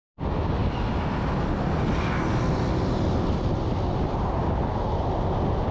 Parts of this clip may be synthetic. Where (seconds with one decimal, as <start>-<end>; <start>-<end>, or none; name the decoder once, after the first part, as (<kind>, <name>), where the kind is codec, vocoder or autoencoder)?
none